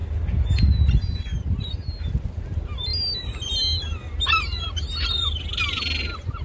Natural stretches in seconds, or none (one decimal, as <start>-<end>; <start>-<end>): 0.0-6.4